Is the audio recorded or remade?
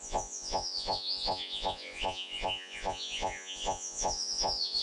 remade